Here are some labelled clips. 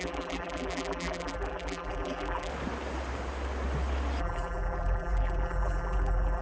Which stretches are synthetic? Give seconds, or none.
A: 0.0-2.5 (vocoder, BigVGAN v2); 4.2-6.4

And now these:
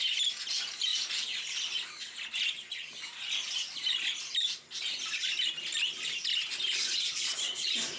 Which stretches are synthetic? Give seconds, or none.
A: none

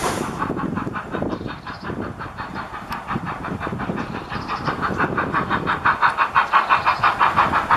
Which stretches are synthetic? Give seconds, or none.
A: 0.0-4.7 (vocoder, BigVGAN v2)

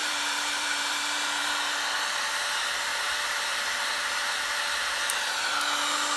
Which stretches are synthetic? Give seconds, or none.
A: 0.0-1.4 (vocoder, BigVGAN v2); 2.9-5.2

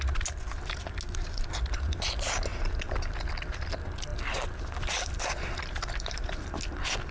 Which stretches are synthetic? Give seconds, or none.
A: 4.1-6.6 (vocoder, BigVGAN v2)

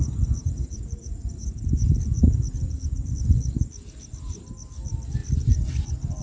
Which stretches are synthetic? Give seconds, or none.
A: 0.4-1.9 (vocoder, BigVGAN v2)

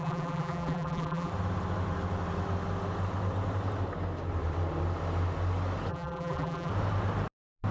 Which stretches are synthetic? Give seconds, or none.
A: 0.0-1.3 (vocoder, BigVGAN v2); 5.9-6.7